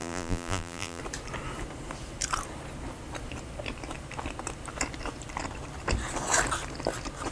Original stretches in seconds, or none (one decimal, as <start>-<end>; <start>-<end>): 1.0-7.3